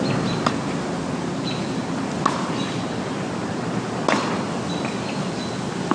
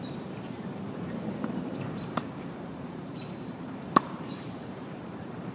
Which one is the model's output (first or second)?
second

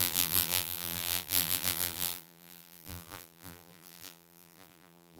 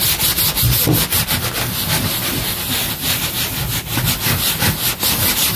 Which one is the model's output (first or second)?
first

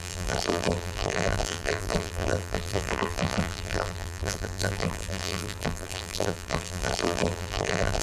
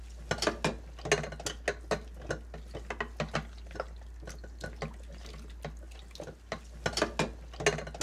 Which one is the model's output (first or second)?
first